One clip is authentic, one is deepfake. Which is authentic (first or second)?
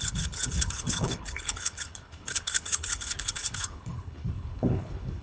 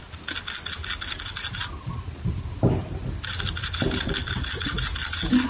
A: second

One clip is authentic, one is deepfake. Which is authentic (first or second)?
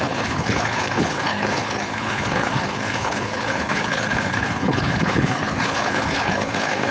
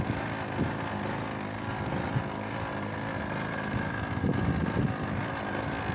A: second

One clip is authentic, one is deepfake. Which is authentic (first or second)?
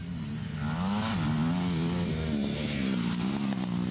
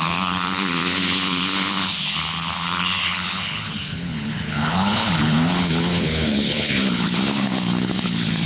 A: first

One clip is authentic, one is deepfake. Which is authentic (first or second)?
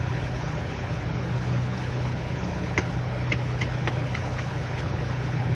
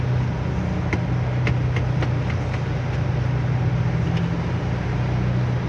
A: second